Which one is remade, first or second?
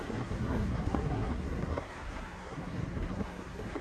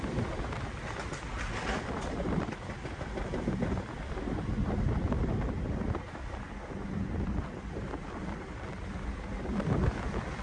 first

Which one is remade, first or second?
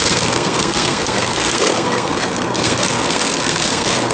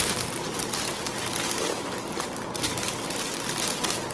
first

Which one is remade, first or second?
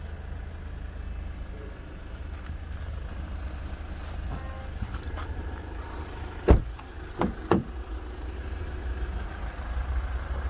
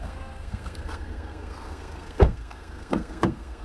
second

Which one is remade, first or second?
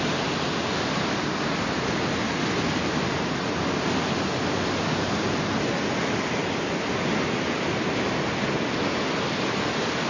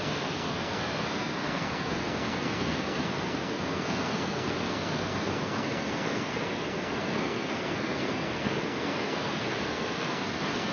second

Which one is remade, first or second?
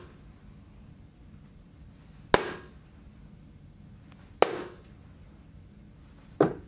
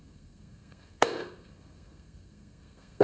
second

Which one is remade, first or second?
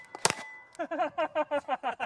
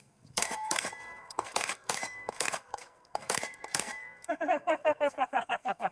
second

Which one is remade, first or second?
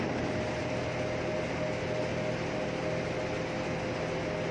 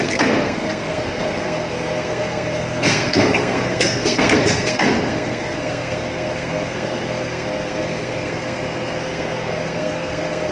second